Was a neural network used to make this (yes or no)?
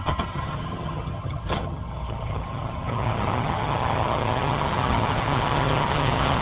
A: yes